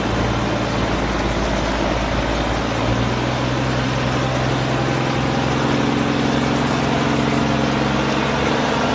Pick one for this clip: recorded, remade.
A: recorded